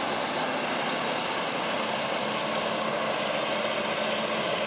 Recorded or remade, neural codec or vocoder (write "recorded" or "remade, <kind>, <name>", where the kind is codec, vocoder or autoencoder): recorded